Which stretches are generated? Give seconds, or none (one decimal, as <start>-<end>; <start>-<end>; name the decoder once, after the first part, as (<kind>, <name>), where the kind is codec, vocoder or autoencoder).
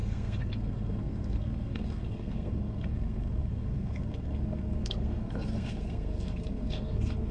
0.0-7.3 (codec, SNAC)